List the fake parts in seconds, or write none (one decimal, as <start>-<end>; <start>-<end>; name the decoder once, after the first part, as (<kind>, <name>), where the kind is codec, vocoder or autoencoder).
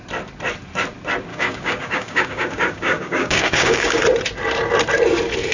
1.3-4.0 (codec, DAC)